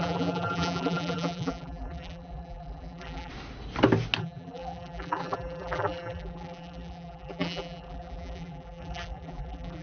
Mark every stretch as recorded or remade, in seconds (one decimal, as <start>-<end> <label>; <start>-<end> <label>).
0.0-3.3 remade; 3.3-4.2 recorded; 4.2-9.8 remade